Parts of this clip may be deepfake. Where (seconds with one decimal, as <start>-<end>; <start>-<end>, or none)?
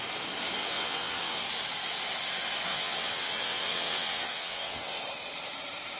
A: 0.6-1.4; 2.7-5.0